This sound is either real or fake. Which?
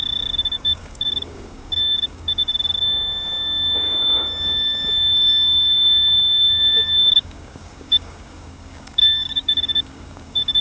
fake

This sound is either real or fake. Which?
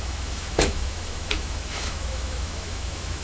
fake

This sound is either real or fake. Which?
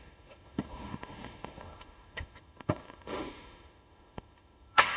fake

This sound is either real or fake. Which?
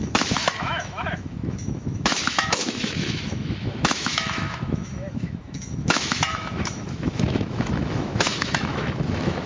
fake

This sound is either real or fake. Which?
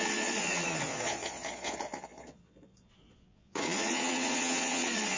fake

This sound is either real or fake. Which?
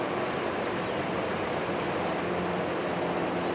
real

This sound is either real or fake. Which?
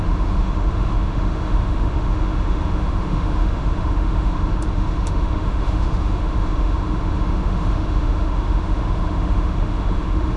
fake